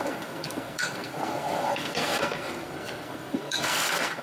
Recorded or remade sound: remade